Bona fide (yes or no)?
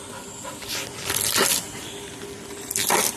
yes